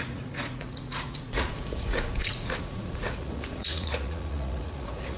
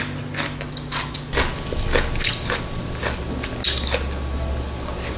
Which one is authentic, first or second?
second